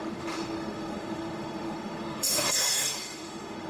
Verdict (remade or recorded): remade